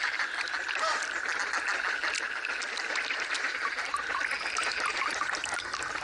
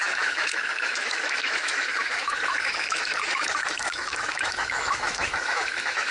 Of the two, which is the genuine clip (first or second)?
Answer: first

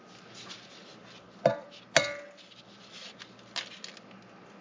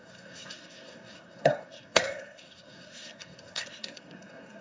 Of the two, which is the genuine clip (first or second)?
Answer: first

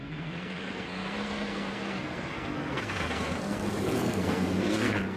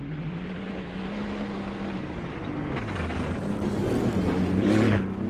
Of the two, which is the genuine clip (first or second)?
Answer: second